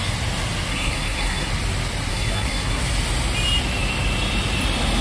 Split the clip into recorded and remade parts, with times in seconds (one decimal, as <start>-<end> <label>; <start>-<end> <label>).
0.0-0.7 recorded; 0.7-1.5 remade; 1.5-2.1 recorded; 2.1-2.8 remade; 2.8-5.0 recorded